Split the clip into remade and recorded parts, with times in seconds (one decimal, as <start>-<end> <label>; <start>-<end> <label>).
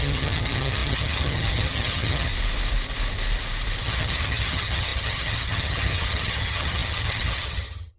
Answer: 0.0-2.3 remade; 2.3-3.8 recorded; 3.8-8.0 remade